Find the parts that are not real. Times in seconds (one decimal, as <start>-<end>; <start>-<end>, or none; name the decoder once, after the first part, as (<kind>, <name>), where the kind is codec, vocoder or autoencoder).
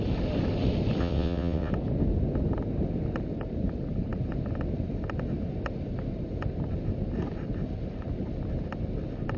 1.0-1.7 (vocoder, WaveNeXt)